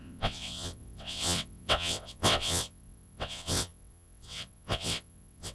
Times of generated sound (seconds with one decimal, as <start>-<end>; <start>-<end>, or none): 0.0-5.5

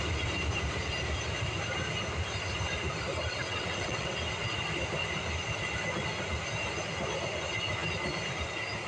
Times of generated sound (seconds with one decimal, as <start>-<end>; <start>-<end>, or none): 3.3-4.1

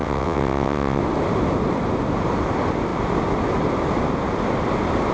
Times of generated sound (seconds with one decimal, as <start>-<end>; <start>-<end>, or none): 0.0-1.0

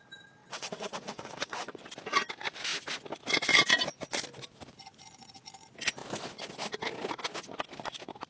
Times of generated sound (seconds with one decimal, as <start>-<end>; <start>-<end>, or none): 0.4-1.8